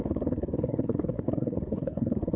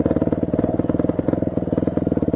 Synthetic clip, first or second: first